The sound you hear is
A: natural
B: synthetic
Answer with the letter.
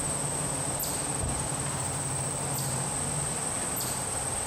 A